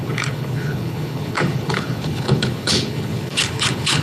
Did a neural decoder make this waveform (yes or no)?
yes